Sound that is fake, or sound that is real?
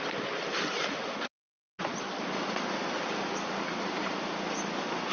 real